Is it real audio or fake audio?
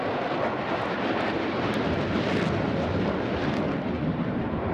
fake